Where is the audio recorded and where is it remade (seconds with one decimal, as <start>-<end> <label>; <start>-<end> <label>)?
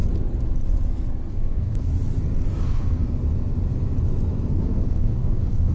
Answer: 0.0-1.3 recorded; 1.3-1.9 remade; 1.9-2.6 recorded; 2.6-3.0 remade; 3.0-4.5 recorded; 4.5-5.7 remade